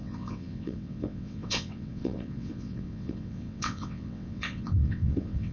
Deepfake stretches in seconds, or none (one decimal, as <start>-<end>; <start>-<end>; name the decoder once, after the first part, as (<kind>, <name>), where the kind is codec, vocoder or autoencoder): 0.0-5.5 (vocoder, WaveNeXt)